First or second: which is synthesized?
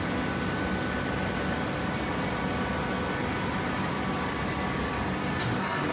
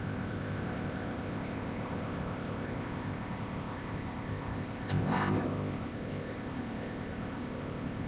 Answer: second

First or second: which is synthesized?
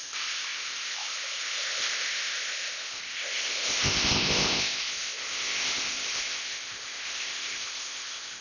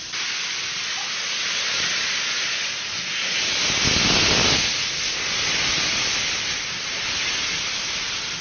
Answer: first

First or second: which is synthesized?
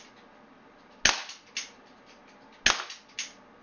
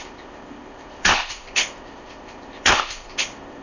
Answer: second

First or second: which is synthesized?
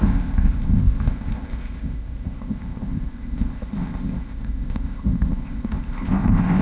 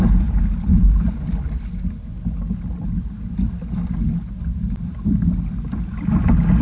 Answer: first